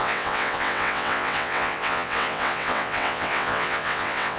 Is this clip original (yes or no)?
no